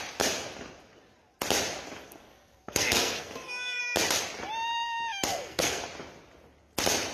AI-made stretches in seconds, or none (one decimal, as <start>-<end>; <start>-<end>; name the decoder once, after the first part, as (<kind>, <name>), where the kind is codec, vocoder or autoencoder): 2.0-3.8 (codec, SNAC); 5.3-5.8